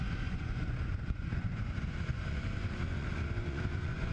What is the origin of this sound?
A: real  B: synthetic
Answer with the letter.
B